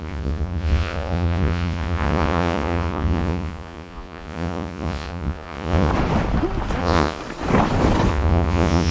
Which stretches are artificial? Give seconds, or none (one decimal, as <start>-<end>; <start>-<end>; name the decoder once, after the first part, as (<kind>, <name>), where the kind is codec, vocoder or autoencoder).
0.0-5.9 (vocoder, Vocos); 6.8-7.2; 8.1-8.9